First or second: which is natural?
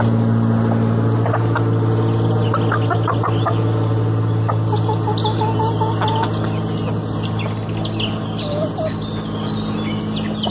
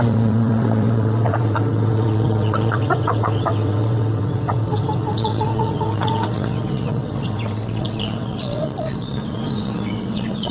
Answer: first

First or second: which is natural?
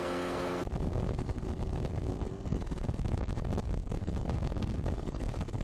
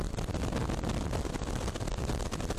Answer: second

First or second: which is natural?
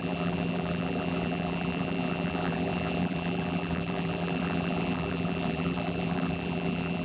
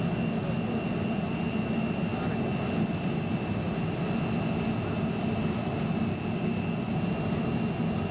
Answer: second